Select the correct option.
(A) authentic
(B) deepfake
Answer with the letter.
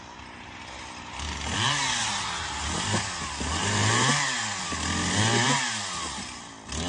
A